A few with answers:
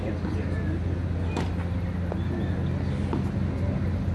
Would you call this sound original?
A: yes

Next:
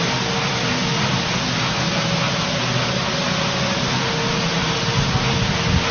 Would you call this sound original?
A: yes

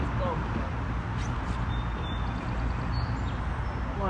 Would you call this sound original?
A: yes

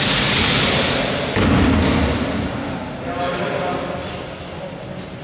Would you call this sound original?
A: yes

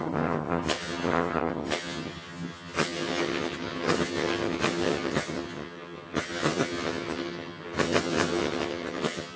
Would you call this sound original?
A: no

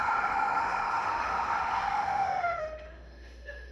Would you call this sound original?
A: no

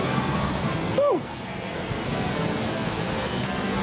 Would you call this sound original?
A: no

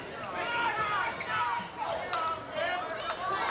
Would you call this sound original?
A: yes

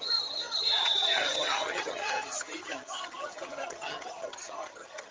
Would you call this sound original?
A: no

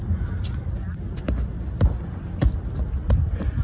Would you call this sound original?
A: yes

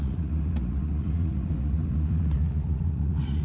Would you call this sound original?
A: no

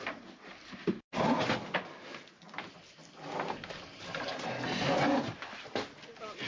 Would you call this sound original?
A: yes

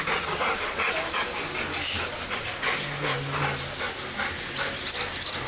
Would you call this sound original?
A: yes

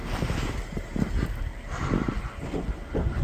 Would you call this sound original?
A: yes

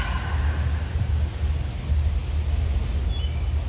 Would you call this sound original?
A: yes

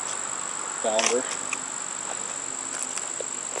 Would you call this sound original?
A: yes